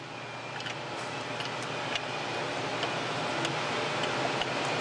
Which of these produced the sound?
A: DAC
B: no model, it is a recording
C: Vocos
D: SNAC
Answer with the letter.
B